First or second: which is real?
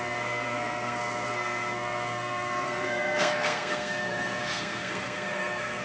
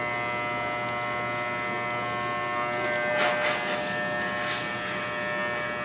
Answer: second